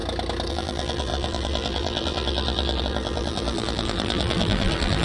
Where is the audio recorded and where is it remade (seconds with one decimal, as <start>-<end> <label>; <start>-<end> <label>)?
0.0-0.5 recorded; 0.5-5.0 remade